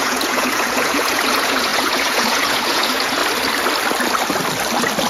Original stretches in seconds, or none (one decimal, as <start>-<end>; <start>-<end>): 3.2-5.1